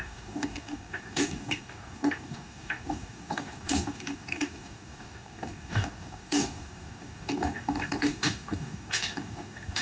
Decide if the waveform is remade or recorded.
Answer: remade